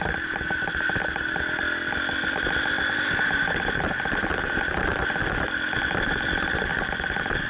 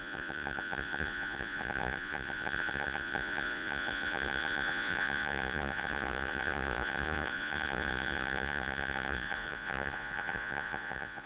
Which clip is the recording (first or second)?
first